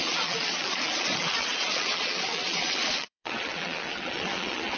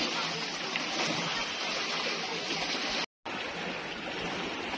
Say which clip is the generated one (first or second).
first